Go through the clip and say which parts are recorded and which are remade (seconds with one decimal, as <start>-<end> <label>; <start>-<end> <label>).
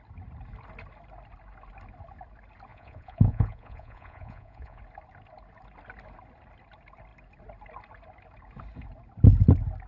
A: 0.0-2.7 recorded; 2.7-4.8 remade; 4.8-9.9 recorded